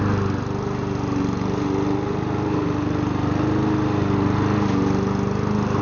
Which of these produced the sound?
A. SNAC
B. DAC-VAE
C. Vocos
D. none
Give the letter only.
D